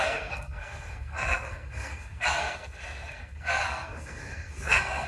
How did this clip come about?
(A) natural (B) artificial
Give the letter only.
B